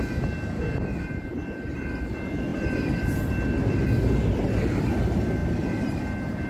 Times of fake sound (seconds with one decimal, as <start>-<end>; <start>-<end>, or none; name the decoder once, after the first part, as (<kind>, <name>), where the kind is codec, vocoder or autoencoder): none